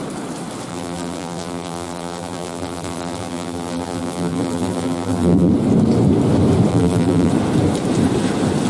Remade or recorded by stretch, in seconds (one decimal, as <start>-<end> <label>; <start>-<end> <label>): 0.0-0.7 recorded; 0.7-5.5 remade; 5.5-6.7 recorded; 6.7-7.3 remade; 7.3-8.7 recorded